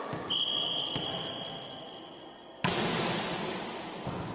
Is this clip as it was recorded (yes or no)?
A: yes